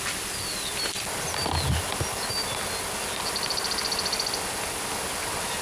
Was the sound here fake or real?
real